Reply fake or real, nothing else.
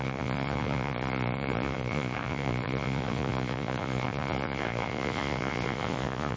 fake